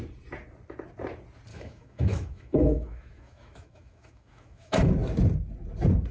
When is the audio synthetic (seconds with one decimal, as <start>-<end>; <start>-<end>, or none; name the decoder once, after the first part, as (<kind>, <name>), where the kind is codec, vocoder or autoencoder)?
1.5-4.9 (autoencoder, DAC-VAE)